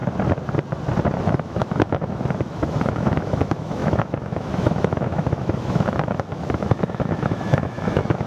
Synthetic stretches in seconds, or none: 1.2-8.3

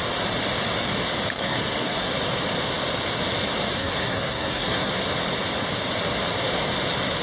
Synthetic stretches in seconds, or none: 1.4-2.1; 3.8-4.9

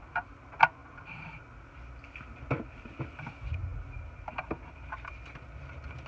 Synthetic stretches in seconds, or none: none

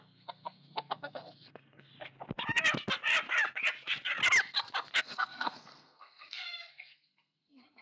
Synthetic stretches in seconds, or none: 0.0-1.9; 5.0-7.8

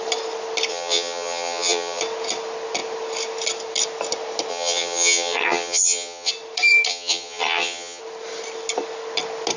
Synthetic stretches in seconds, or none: 0.7-2.0; 4.5-6.3; 6.9-8.0

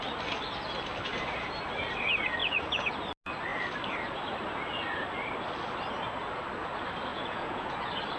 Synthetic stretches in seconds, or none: 2.4-2.9; 7.1-7.7

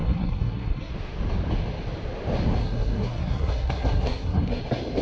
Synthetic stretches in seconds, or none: 0.0-0.9; 2.6-4.6